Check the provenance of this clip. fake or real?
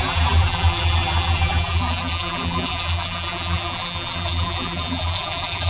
fake